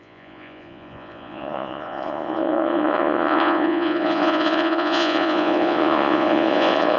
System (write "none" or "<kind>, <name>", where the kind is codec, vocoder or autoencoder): vocoder, Vocos